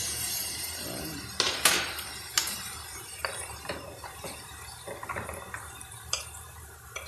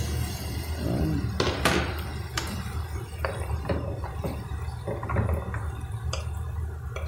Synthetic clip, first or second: first